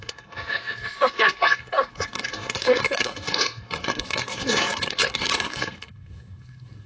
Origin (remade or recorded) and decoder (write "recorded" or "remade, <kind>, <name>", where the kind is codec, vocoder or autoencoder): remade, codec, SNAC